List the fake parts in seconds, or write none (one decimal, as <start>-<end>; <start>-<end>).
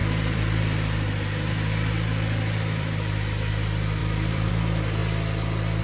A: 0.0-3.5; 4.0-4.5